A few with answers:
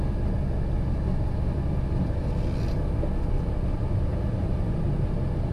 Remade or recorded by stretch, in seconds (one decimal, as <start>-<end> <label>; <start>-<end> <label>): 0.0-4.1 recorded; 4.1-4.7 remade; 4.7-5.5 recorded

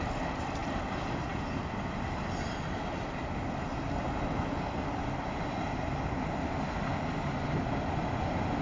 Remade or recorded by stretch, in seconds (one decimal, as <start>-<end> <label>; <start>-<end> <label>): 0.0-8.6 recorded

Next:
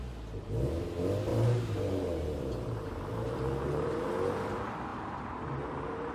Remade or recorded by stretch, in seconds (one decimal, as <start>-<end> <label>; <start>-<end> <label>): 0.0-1.3 recorded; 1.3-4.0 remade; 4.0-4.9 recorded; 4.9-6.1 remade

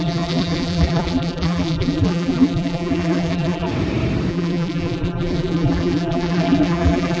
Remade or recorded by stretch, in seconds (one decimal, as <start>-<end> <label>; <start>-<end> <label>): 0.0-3.7 remade; 3.7-4.3 recorded; 4.3-7.2 remade